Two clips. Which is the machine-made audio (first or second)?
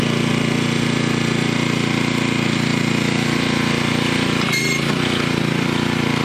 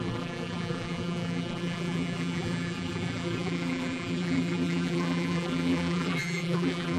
second